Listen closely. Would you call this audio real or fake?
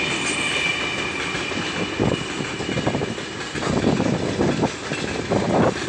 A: real